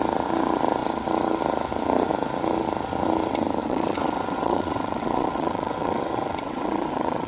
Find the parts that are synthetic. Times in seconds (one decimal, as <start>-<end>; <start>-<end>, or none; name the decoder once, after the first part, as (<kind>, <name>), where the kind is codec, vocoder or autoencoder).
3.6-7.3 (vocoder, WaveNeXt)